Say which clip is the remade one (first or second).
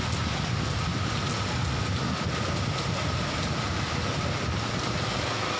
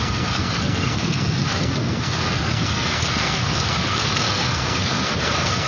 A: second